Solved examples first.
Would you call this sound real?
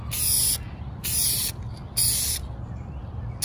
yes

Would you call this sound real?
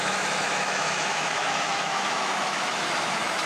no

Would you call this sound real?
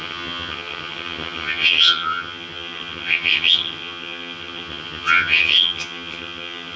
no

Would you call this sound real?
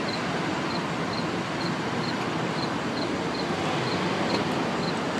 yes